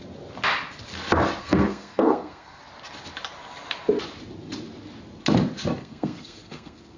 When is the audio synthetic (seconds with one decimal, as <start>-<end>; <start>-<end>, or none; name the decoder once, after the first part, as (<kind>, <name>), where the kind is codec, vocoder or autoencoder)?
1.4-2.6 (codec, SNAC); 5.8-7.0